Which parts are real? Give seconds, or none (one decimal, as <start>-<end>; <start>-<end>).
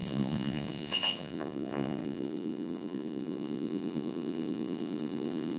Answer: none